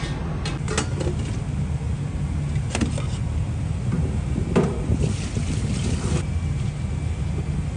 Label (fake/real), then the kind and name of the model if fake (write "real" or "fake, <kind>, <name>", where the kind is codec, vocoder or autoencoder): real